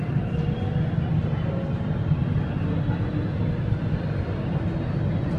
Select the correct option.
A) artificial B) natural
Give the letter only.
B